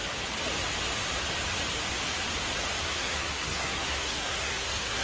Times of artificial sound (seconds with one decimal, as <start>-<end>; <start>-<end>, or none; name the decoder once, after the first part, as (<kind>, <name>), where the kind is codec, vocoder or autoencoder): 2.8-5.0 (codec, SNAC)